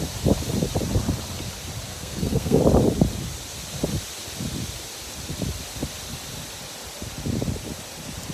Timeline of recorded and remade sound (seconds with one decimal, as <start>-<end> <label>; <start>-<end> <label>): 0.0-1.9 recorded; 1.9-2.6 remade; 2.6-8.3 recorded

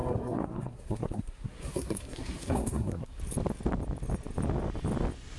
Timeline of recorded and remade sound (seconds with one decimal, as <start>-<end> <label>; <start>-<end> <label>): 0.0-3.2 remade; 3.2-5.4 recorded

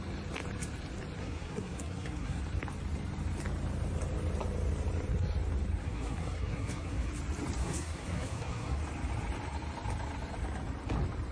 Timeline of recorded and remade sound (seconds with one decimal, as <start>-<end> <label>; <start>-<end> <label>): 0.0-1.2 recorded; 1.2-2.4 remade; 2.4-5.8 recorded; 5.8-7.1 remade; 7.1-7.6 recorded; 7.6-8.8 remade; 8.8-11.3 recorded

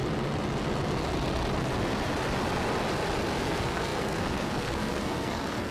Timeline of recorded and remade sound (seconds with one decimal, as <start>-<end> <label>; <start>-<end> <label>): 0.0-3.4 recorded; 3.4-5.7 remade

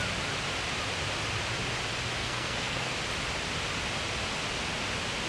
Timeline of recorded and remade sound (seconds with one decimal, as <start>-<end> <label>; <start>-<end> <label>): 0.0-2.2 recorded; 2.2-2.9 remade; 2.9-5.3 recorded

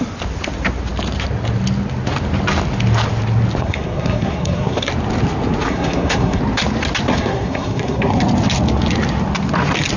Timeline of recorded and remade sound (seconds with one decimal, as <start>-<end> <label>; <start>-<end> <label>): 0.0-3.6 recorded; 3.6-4.9 remade; 4.9-5.7 recorded; 5.7-6.4 remade; 6.4-7.1 recorded; 7.1-8.2 remade; 8.2-10.0 recorded

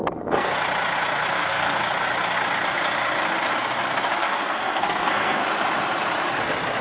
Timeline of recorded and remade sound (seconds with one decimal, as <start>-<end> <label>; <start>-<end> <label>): 0.0-0.5 remade; 0.5-1.3 recorded; 1.3-1.8 remade; 1.8-4.2 recorded; 4.2-5.4 remade; 5.4-6.8 recorded

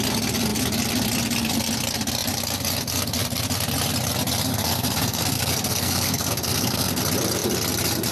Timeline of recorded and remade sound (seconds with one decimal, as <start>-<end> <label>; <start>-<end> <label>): 0.0-4.5 recorded; 4.5-7.0 remade; 7.0-8.1 recorded